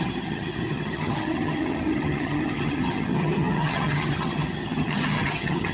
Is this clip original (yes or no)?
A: no